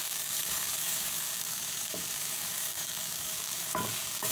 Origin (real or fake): fake